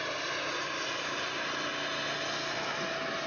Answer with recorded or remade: recorded